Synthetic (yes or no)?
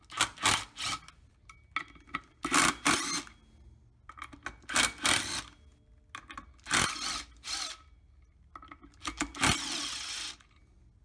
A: no